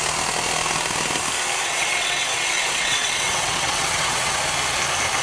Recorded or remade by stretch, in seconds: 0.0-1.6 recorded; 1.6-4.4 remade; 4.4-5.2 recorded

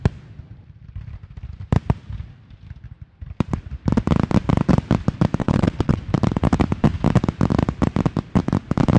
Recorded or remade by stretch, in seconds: 0.0-5.4 recorded; 5.4-6.0 remade; 6.0-9.0 recorded

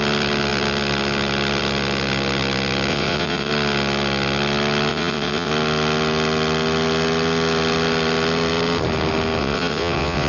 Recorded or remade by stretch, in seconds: 0.0-2.9 recorded; 2.9-3.5 remade; 3.5-4.9 recorded; 4.9-5.5 remade; 5.5-9.4 recorded; 9.4-10.3 remade